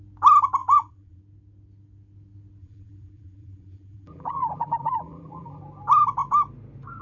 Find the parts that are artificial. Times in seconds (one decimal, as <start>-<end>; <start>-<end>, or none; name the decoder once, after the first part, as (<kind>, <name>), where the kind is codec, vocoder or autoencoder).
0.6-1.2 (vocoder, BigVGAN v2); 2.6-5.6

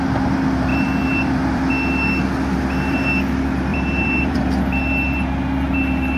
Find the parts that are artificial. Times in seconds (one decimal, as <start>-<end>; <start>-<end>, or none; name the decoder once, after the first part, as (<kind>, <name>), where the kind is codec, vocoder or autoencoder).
0.7-1.7 (vocoder, BigVGAN v2); 3.7-4.4

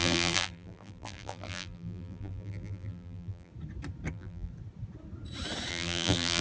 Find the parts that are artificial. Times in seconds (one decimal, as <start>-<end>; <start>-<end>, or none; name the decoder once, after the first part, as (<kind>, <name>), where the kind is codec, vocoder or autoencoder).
0.0-3.5 (vocoder, BigVGAN v2); 4.1-4.5; 5.7-6.4

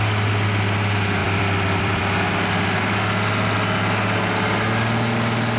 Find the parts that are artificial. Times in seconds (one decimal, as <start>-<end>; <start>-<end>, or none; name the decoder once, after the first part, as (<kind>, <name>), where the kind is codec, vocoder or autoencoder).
1.2-2.0 (vocoder, BigVGAN v2)